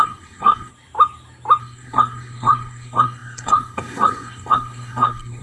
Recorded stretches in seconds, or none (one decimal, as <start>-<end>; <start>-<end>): 0.7-1.6